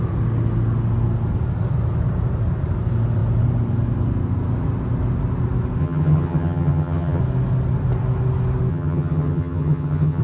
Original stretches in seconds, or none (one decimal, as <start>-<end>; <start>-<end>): 0.0-5.8; 7.2-8.7